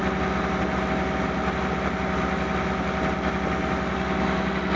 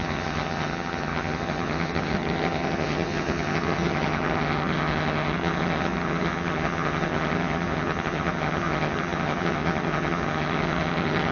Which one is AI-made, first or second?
second